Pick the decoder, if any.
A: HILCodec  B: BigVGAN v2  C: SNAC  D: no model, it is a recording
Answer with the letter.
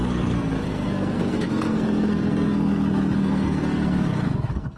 C